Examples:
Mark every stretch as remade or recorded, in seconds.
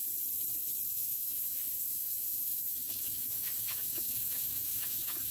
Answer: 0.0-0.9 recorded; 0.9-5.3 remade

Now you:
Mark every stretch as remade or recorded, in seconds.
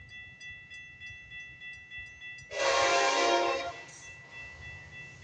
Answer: 0.0-2.9 recorded; 2.9-3.7 remade; 3.7-5.2 recorded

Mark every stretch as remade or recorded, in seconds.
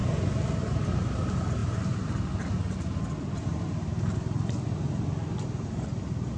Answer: 0.0-6.4 recorded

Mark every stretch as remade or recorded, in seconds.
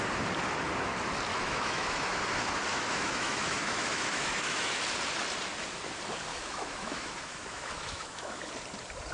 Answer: 0.0-1.3 recorded; 1.3-2.2 remade; 2.2-2.7 recorded; 2.7-4.8 remade; 4.8-6.3 recorded; 6.3-8.5 remade; 8.5-9.1 recorded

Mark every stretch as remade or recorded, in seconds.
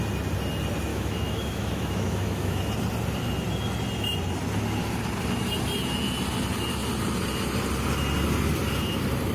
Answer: 0.0-0.9 recorded; 0.9-2.6 remade; 2.6-9.3 recorded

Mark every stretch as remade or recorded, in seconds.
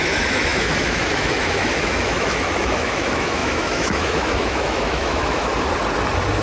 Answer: 0.0-5.5 remade; 5.5-6.4 recorded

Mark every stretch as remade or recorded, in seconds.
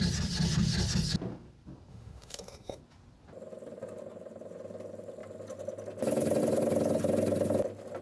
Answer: 0.0-1.9 recorded; 1.9-2.8 remade; 2.8-8.0 recorded